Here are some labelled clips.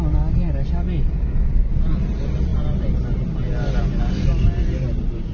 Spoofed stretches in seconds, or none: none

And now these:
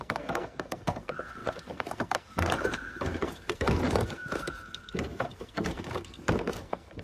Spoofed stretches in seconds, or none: 0.0-7.0 (codec, SNAC)

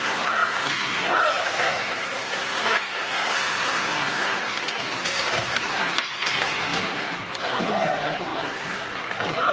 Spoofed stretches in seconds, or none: 0.0-9.5 (codec, SNAC)